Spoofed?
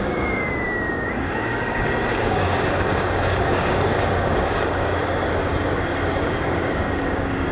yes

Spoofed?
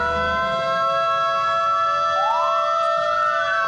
no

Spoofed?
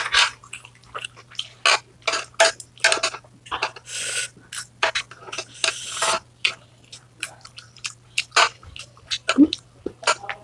no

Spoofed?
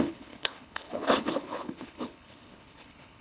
yes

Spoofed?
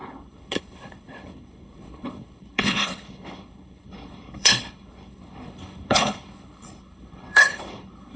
yes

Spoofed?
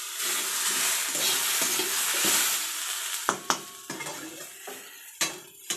no